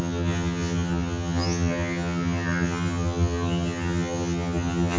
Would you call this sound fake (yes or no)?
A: yes